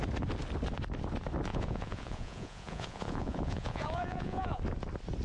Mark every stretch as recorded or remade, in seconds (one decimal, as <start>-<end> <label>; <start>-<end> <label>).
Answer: 0.0-1.5 recorded; 1.5-4.6 remade; 4.6-5.2 recorded